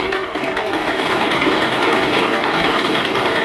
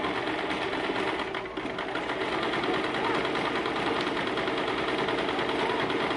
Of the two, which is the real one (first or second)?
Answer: second